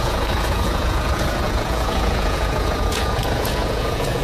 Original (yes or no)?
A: no